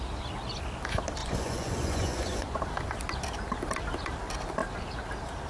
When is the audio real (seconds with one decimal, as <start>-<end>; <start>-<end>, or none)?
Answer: 0.0-1.2; 2.6-5.5